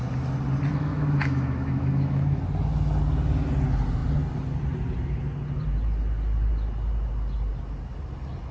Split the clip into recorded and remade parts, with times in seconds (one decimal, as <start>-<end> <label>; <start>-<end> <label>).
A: 0.0-0.7 recorded; 0.7-2.4 remade; 2.4-8.5 recorded